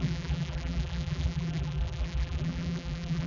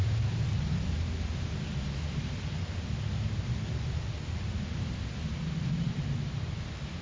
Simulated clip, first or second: first